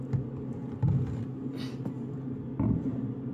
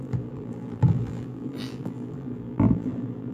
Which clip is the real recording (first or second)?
first